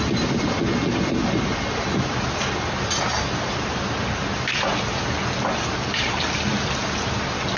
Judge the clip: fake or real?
real